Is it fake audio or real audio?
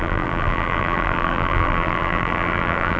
fake